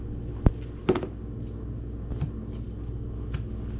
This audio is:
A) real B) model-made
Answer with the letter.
A